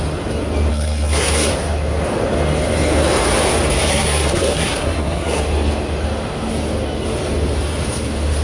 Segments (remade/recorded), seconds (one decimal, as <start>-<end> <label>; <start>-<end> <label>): 0.0-0.7 recorded; 0.7-1.5 remade; 1.5-3.9 recorded; 3.9-5.4 remade; 5.4-8.4 recorded